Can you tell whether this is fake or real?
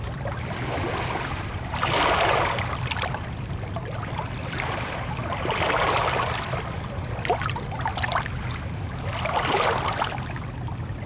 real